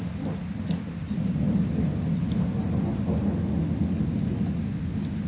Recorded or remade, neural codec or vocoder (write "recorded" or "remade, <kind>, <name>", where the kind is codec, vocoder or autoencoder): recorded